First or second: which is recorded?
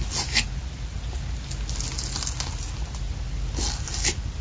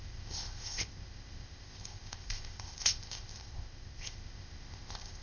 first